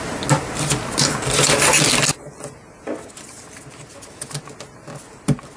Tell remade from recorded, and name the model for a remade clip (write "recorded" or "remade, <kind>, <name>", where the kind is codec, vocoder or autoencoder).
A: recorded